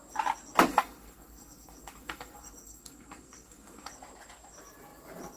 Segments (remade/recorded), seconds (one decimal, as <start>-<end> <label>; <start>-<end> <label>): 0.0-0.7 recorded; 0.7-3.9 remade; 3.9-5.4 recorded